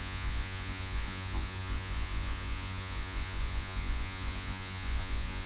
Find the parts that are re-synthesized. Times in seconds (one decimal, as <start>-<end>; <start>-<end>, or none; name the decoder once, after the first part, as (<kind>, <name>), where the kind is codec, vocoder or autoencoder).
0.0-5.5 (vocoder, Vocos)